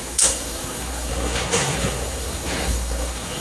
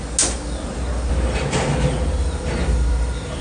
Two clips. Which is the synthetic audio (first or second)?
first